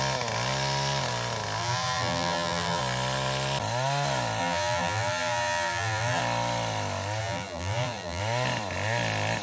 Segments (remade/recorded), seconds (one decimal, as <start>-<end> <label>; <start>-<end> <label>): 0.0-1.6 recorded; 1.6-2.8 remade; 2.8-4.4 recorded; 4.4-6.2 remade; 6.2-7.2 recorded; 7.2-8.2 remade; 8.2-9.4 recorded